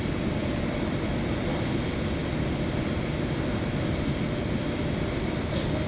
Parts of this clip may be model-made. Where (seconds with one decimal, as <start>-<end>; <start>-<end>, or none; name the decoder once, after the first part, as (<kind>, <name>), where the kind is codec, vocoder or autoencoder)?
none